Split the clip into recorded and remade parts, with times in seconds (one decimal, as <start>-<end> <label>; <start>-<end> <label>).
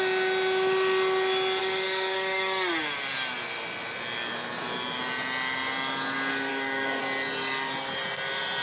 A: 0.0-1.6 recorded; 1.6-2.7 remade; 2.7-6.5 recorded; 6.5-7.0 remade; 7.0-8.6 recorded